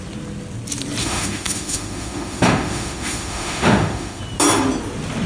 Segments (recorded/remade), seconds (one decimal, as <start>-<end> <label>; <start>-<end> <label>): 0.0-1.0 recorded; 1.0-4.2 remade; 4.2-5.3 recorded